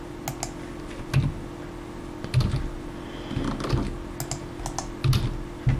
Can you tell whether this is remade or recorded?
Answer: recorded